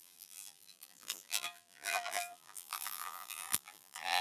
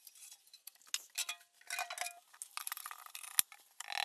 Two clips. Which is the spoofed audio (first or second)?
first